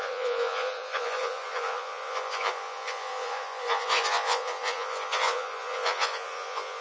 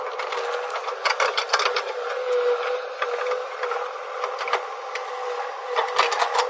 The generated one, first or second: first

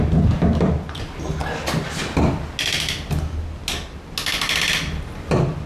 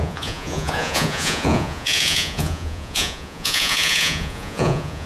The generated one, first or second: second